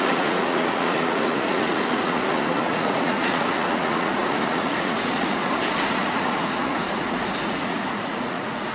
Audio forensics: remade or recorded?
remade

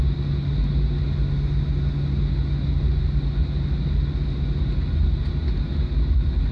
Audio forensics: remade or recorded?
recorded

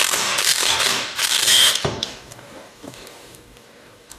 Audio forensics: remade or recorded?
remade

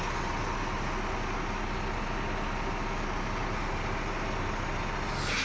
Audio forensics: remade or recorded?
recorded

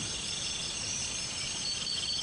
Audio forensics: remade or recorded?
recorded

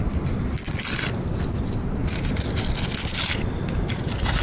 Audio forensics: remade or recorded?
recorded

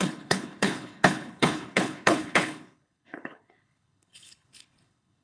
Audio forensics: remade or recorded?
remade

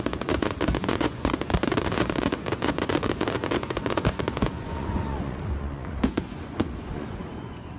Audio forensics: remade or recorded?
remade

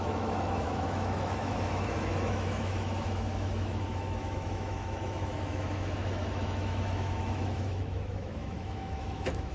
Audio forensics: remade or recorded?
remade